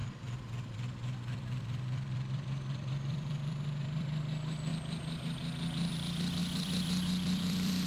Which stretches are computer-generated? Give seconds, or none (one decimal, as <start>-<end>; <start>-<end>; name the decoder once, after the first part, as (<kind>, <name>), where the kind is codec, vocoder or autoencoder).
0.0-4.7 (vocoder, BigVGAN v2); 5.9-7.9